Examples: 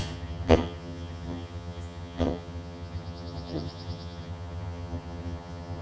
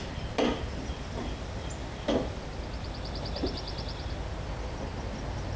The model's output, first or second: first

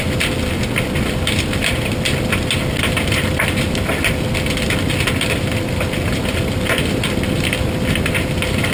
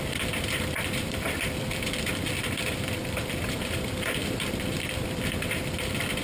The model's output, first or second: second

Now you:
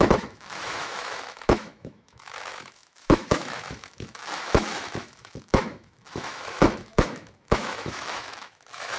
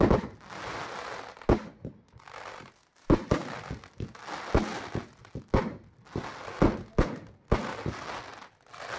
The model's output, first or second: first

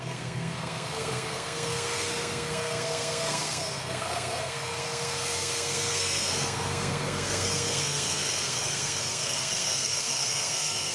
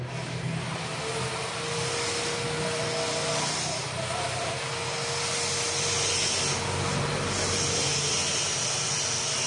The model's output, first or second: first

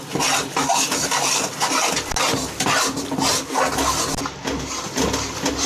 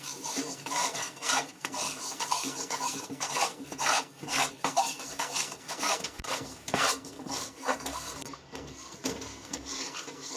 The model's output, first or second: second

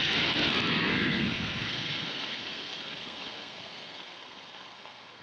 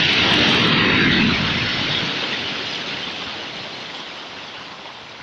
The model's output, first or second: first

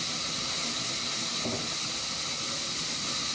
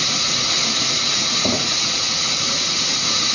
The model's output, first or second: second